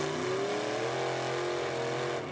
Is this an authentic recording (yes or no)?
yes